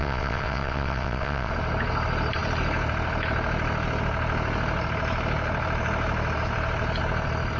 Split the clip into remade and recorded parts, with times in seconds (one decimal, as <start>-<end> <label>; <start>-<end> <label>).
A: 0.0-1.5 remade; 1.5-7.6 recorded